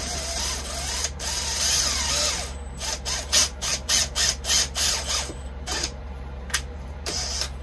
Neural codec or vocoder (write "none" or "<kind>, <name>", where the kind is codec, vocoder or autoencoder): vocoder, BigVGAN v2